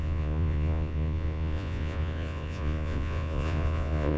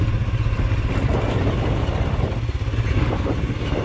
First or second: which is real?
second